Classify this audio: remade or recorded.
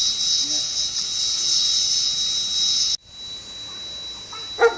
recorded